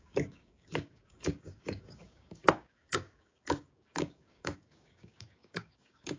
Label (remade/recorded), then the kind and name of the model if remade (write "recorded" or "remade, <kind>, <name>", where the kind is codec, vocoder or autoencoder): remade, codec, DAC